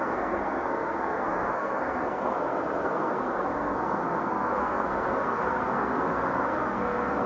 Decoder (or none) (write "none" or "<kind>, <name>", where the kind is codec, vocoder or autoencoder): codec, SNAC